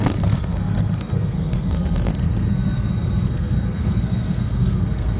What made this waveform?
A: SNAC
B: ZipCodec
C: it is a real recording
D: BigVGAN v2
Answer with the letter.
A